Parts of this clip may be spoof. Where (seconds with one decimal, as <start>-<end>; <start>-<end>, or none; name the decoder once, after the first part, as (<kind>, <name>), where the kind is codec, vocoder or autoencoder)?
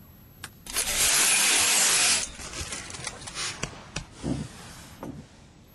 none